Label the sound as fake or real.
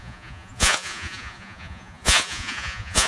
fake